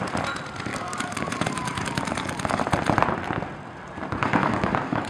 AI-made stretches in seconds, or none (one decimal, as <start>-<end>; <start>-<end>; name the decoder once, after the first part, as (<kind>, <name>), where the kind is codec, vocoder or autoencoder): 0.7-2.6 (codec, DAC); 4.2-5.1